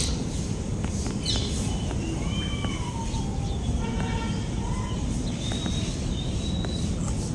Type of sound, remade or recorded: recorded